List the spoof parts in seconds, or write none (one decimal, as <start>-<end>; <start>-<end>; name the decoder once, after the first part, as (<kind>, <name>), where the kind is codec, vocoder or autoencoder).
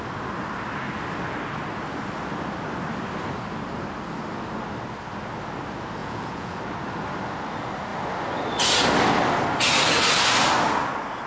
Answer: 6.0-6.6 (vocoder, Vocos)